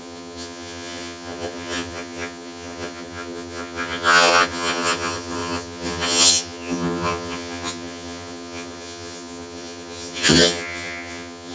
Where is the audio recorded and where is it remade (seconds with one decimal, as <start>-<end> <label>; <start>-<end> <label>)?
0.0-11.5 remade